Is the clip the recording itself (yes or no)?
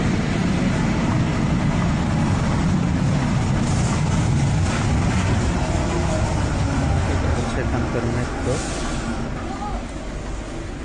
yes